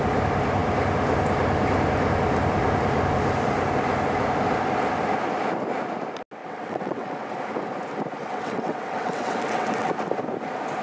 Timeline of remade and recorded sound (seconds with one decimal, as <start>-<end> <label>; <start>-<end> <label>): 0.0-6.4 recorded; 6.4-7.3 remade; 7.3-8.2 recorded; 8.2-9.9 remade; 9.9-10.8 recorded